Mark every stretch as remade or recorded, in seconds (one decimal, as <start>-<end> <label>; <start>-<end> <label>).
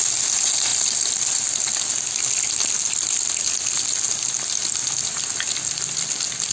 0.0-6.5 recorded